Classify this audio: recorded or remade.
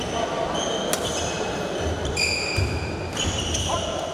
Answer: recorded